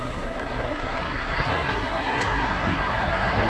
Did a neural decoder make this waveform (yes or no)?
yes